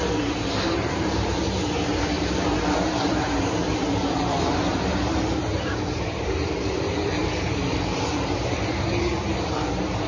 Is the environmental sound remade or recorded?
remade